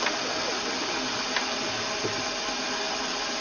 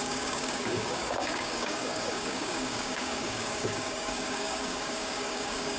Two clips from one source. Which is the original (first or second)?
first